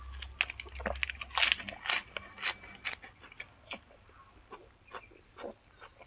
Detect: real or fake real